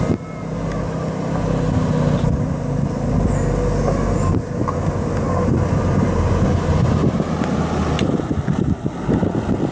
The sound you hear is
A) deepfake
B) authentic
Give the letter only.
B